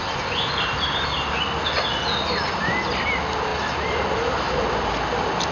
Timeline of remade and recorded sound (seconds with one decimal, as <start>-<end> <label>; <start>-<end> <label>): 0.0-5.5 recorded